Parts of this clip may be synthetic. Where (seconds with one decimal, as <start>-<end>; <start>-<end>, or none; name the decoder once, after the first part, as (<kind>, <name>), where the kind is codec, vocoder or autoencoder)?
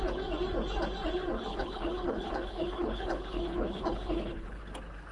1.5-4.6 (codec, HILCodec)